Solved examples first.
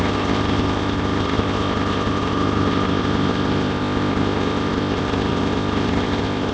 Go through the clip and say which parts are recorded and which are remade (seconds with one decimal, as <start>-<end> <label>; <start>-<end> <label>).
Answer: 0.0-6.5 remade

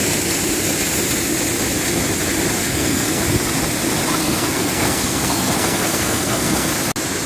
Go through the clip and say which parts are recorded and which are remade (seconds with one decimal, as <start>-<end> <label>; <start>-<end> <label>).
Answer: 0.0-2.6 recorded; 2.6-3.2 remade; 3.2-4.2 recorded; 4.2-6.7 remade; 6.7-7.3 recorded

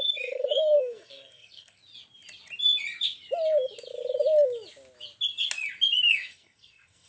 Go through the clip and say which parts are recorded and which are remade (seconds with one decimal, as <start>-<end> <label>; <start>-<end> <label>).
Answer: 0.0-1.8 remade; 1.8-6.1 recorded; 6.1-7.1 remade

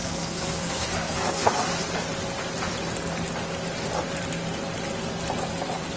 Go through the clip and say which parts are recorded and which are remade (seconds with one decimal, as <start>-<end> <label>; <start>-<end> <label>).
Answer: 0.0-1.7 remade; 1.7-6.0 recorded

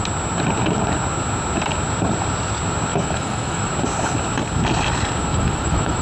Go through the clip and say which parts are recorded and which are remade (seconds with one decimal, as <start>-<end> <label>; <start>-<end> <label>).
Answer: 0.0-2.9 recorded; 2.9-3.7 remade; 3.7-5.3 recorded; 5.3-6.0 remade

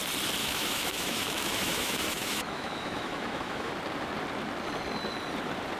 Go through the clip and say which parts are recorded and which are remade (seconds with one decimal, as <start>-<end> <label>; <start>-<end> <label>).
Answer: 0.0-0.4 recorded; 0.4-3.7 remade; 3.7-5.8 recorded

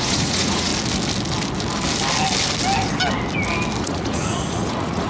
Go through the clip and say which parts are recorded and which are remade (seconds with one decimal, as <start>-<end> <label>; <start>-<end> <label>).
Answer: 0.0-0.7 remade; 0.7-3.8 recorded; 3.8-5.1 remade